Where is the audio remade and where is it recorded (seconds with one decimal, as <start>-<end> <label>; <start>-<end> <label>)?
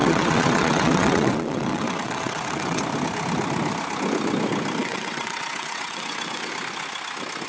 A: 0.0-2.8 remade; 2.8-4.8 recorded; 4.8-6.5 remade; 6.5-7.5 recorded